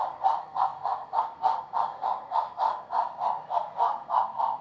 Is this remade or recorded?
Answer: remade